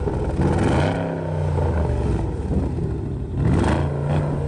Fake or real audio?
real